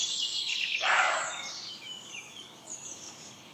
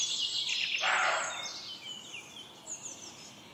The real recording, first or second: second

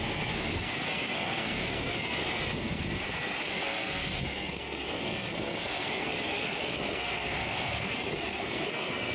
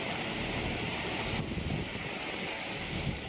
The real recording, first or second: second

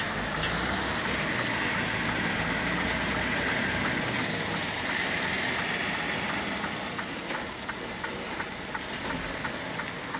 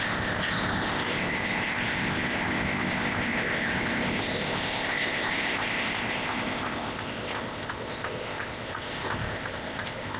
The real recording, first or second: first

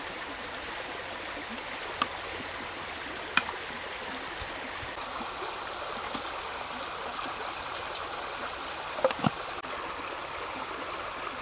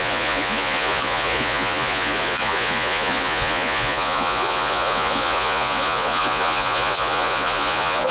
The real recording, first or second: first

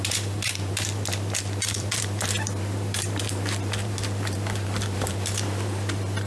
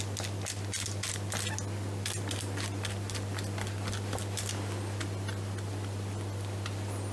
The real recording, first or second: second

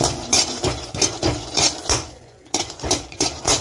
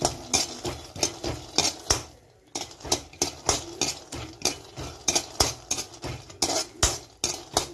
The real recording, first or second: second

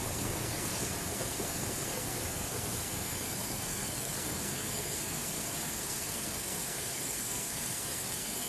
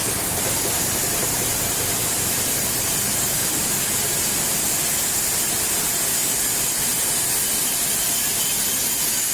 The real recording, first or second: second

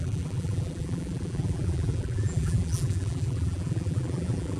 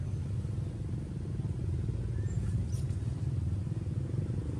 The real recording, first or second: second